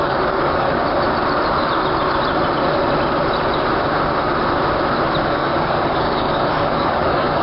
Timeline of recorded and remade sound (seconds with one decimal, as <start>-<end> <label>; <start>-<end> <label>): 0.0-0.8 remade; 0.8-5.2 recorded; 5.2-7.4 remade